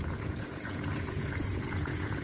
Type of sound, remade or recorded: remade